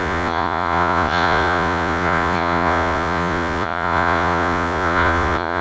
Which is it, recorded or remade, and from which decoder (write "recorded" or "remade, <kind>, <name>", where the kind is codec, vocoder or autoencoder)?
remade, vocoder, Vocos